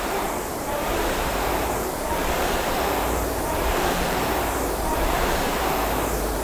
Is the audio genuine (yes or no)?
no